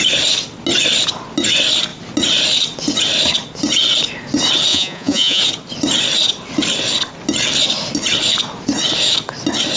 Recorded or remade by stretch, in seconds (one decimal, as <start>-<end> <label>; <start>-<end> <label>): 0.0-4.7 recorded; 4.7-5.4 remade; 5.4-9.8 recorded